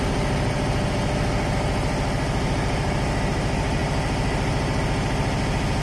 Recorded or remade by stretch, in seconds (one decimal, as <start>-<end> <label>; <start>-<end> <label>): 0.0-5.8 recorded